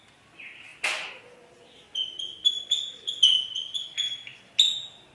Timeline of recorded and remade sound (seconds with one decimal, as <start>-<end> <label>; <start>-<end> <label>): 0.0-5.1 recorded